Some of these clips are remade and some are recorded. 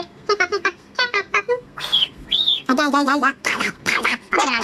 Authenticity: remade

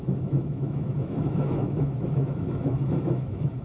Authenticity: remade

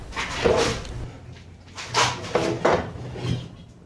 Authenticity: recorded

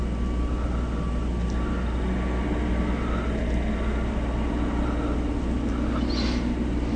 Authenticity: recorded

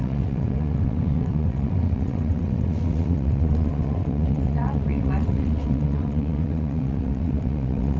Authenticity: remade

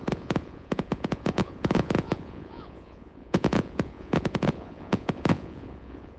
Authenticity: remade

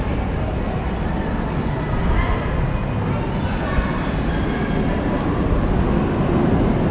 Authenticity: recorded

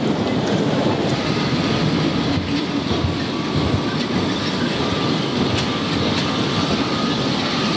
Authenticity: recorded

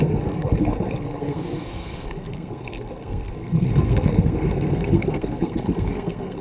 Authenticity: remade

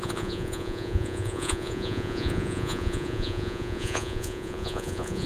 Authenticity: remade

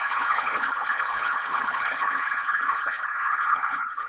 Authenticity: remade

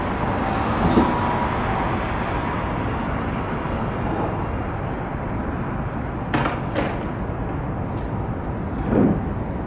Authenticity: recorded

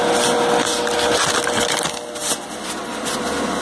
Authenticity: recorded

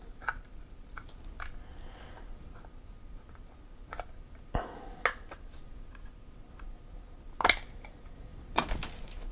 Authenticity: recorded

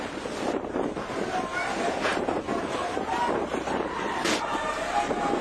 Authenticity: recorded